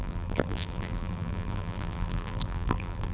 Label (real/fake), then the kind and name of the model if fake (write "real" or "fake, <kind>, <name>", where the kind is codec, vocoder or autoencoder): fake, vocoder, BigVGAN v2